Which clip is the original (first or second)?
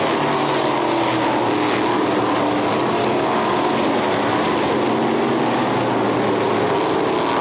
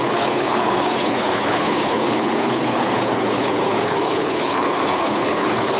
first